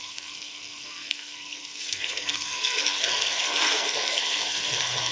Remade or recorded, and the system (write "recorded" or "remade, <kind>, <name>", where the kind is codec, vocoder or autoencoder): remade, codec, SNAC